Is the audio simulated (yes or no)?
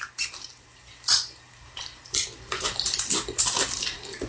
yes